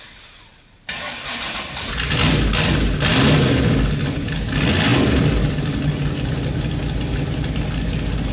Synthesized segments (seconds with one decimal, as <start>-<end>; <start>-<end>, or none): none